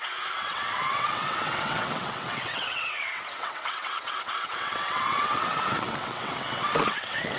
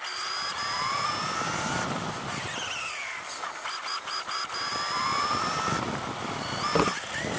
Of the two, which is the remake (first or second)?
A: first